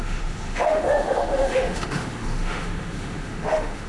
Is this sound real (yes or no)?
no